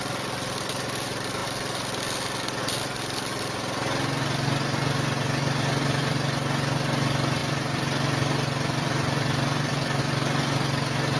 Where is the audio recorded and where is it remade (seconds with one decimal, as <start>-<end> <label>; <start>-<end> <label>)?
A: 0.0-7.4 recorded; 7.4-10.0 remade; 10.0-11.2 recorded